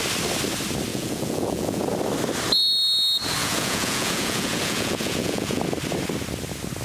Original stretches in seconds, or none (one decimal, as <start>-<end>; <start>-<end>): 0.0-0.9; 1.8-3.4; 5.6-6.8